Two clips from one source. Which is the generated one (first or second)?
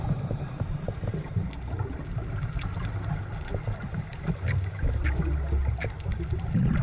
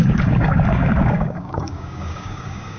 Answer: second